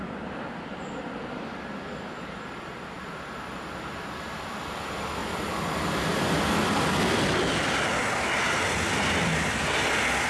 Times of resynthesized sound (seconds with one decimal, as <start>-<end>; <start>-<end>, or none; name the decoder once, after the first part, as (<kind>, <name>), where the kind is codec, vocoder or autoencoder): none